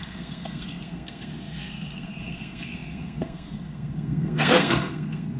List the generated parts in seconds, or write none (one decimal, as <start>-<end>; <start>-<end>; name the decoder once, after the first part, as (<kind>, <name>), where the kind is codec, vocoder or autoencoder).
0.0-5.4 (codec, SNAC)